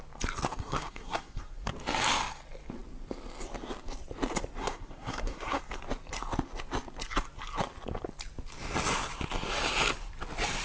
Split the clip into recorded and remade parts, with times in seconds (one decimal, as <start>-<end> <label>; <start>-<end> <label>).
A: 0.0-0.6 recorded; 0.6-1.6 remade; 1.6-4.6 recorded; 4.6-5.6 remade; 5.6-10.6 recorded